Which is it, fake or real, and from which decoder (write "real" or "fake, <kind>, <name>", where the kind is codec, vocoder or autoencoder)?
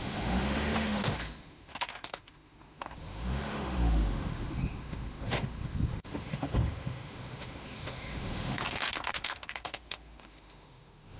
fake, autoencoder, DAC-VAE